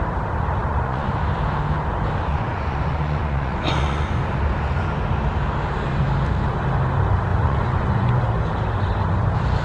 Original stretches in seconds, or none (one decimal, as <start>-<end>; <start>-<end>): 0.0-0.6; 1.1-2.3; 4.2-7.3; 8.2-9.6